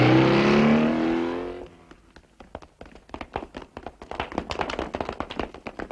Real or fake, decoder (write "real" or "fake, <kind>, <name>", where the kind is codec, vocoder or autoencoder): real